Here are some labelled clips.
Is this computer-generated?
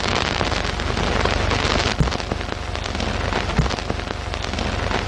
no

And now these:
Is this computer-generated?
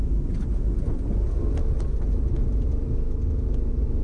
no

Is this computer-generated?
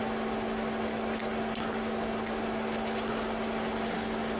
no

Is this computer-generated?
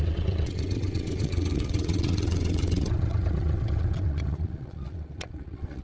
yes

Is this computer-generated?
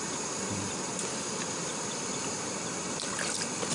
no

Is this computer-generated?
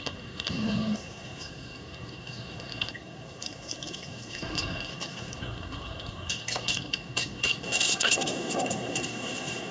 yes